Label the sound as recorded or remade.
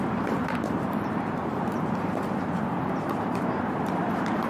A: remade